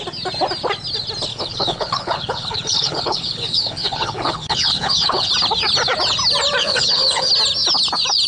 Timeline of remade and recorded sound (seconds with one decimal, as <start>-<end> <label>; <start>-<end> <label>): 0.0-1.3 recorded; 1.3-5.3 remade; 5.3-6.6 recorded; 6.6-7.3 remade; 7.3-8.3 recorded